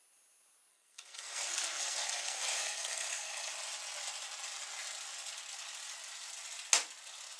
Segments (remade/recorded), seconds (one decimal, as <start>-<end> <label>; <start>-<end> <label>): 0.0-0.7 recorded; 0.7-3.5 remade; 3.5-7.4 recorded